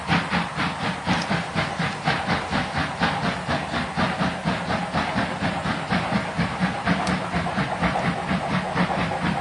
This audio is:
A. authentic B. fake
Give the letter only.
A